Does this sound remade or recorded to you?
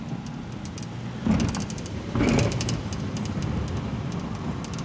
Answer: recorded